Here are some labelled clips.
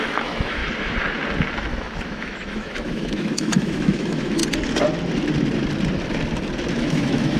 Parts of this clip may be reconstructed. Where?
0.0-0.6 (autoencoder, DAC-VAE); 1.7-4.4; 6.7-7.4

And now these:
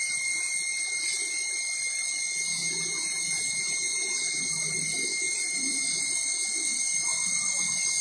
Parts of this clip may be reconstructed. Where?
2.6-4.5 (vocoder, BigVGAN v2); 5.1-6.0

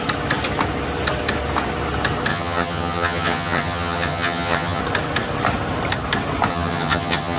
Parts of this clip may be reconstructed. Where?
2.3-4.8 (vocoder, HiFi-GAN); 6.5-7.4